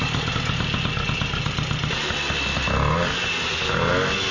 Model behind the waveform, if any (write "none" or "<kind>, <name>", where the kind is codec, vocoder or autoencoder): none